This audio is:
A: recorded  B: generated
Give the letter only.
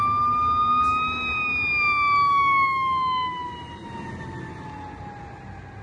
A